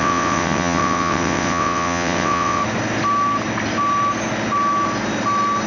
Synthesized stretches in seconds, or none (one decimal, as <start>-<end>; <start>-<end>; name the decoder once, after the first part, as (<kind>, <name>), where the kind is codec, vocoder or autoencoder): 0.0-2.6 (vocoder, WaveNeXt)